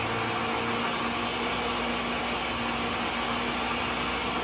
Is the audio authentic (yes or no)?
yes